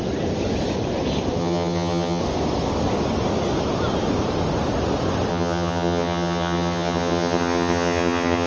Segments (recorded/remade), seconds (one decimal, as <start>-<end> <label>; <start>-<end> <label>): 0.0-1.4 recorded; 1.4-2.2 remade; 2.2-5.3 recorded; 5.3-8.5 remade